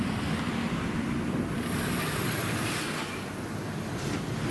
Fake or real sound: real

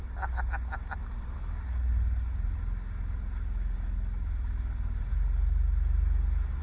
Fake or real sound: real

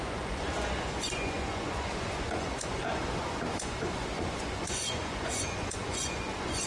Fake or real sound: fake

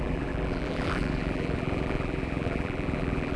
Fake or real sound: fake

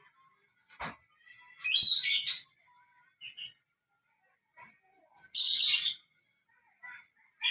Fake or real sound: real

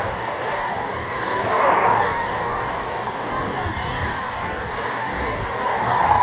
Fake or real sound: fake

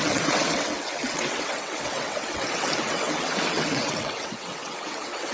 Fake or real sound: fake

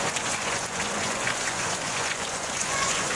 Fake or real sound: fake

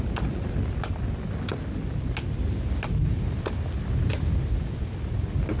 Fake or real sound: real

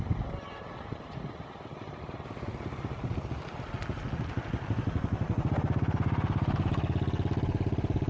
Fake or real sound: real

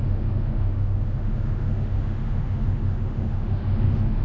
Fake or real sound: fake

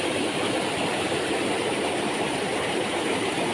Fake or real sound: fake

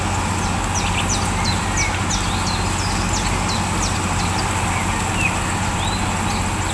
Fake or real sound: real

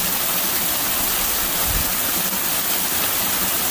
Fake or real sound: real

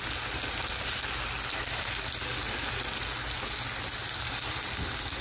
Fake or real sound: real